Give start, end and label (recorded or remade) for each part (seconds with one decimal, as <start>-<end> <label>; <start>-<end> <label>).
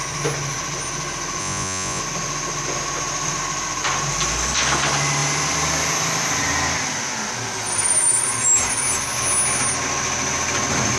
0.0-1.4 recorded; 1.4-2.0 remade; 2.0-11.0 recorded